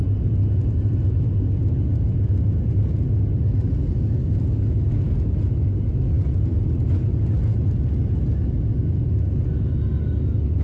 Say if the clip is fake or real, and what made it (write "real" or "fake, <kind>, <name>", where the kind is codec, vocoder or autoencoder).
real